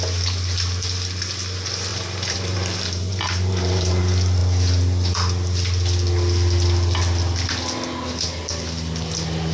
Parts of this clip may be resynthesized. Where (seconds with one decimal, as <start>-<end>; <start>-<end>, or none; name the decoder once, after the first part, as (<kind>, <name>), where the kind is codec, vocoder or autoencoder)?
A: 1.9-4.0 (vocoder, BigVGAN v2)